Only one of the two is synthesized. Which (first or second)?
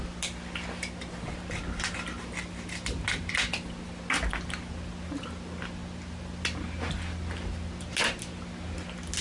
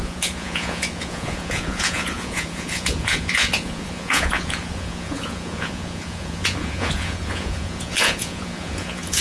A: second